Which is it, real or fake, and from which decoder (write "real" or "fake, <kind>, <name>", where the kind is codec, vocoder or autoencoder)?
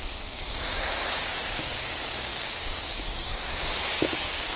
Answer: fake, codec, DAC